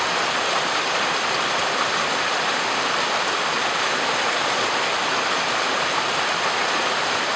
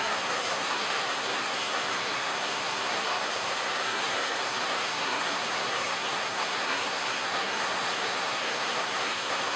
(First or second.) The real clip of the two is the first